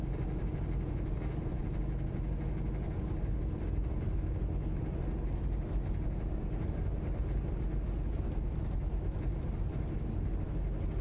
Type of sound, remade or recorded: recorded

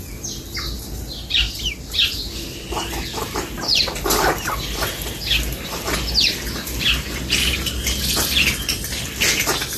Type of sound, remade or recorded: recorded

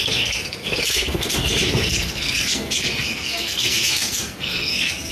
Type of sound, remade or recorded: remade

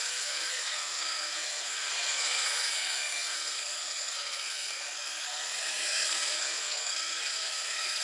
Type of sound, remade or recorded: remade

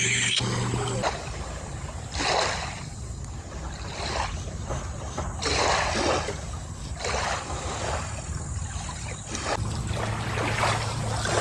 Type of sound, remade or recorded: recorded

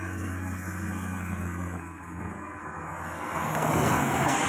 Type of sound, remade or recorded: remade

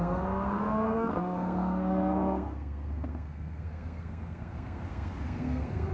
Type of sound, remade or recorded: remade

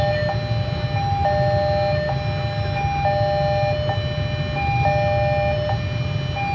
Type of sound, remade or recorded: recorded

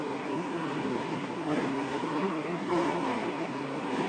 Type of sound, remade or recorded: remade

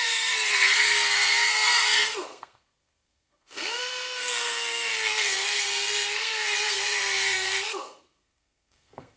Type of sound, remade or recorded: remade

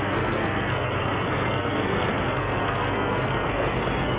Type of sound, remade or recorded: remade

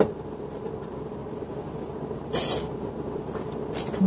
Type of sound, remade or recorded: recorded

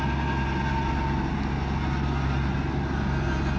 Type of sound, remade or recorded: recorded